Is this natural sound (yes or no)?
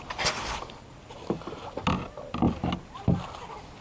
yes